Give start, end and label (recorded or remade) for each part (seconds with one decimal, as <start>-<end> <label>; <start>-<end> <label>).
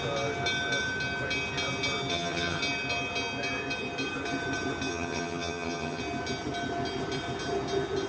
0.0-2.1 recorded; 2.1-2.6 remade; 2.6-4.9 recorded; 4.9-6.0 remade; 6.0-8.1 recorded